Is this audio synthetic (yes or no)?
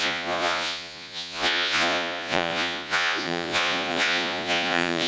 yes